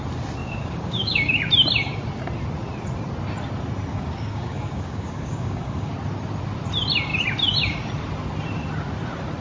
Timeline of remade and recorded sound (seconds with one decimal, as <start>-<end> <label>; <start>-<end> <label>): 0.0-0.4 recorded; 0.4-1.4 remade; 1.4-3.9 recorded; 3.9-5.9 remade; 5.9-9.4 recorded